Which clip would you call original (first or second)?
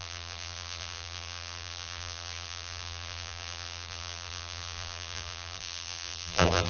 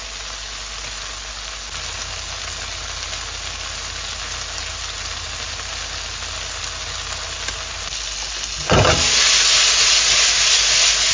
second